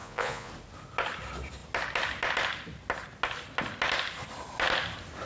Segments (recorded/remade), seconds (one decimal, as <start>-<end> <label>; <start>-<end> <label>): 0.0-0.5 remade; 0.5-5.3 recorded

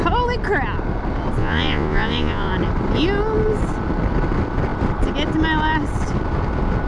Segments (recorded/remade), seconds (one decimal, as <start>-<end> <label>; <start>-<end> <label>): 0.0-1.4 recorded; 1.4-2.5 remade; 2.5-6.9 recorded

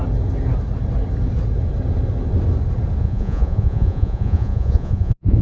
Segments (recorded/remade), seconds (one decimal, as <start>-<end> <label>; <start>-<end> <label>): 0.0-3.0 recorded; 3.0-5.4 remade

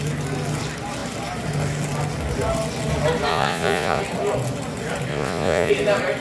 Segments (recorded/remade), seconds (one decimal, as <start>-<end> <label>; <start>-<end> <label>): 0.0-3.3 recorded; 3.3-4.0 remade; 4.0-5.1 recorded; 5.1-5.7 remade; 5.7-6.2 recorded